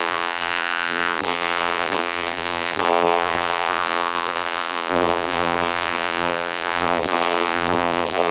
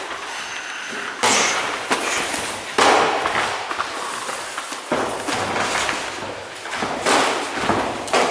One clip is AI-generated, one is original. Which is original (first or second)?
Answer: second